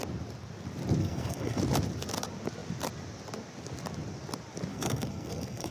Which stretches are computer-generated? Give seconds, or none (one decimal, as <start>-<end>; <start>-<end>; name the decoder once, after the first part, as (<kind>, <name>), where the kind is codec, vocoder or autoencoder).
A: 1.0-1.6 (codec, SNAC); 4.7-5.7

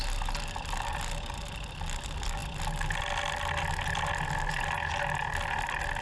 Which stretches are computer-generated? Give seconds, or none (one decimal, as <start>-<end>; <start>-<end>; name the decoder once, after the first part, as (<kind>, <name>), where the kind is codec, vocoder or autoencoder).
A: none

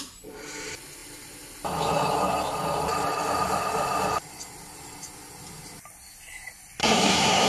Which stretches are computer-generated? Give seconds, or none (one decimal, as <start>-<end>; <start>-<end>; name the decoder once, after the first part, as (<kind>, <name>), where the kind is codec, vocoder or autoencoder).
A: 6.8-7.5 (codec, SNAC)

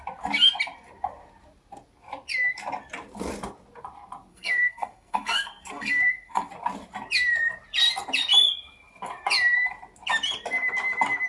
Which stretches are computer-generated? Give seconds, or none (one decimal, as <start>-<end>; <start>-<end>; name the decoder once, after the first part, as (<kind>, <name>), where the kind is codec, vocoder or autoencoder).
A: 4.3-6.5 (codec, SNAC)

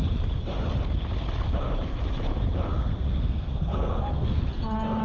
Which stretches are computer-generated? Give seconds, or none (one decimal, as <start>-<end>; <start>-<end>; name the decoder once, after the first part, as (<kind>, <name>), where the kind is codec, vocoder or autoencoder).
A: 2.8-4.5 (codec, SNAC)

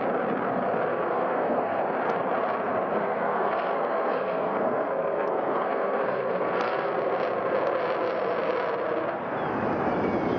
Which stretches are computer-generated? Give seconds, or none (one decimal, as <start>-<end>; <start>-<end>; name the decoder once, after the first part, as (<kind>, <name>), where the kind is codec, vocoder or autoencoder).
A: 0.9-1.8 (codec, SNAC); 2.9-6.9

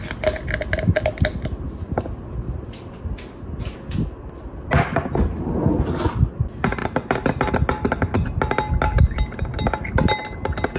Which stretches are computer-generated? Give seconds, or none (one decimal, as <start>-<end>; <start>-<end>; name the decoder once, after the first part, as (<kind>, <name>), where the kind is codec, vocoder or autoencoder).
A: none

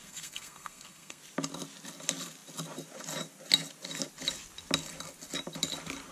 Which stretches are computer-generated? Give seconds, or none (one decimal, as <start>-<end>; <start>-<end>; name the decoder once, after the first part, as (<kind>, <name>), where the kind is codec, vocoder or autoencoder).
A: 0.0-1.2 (codec, SNAC)